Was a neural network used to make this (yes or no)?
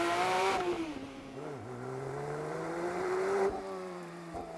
yes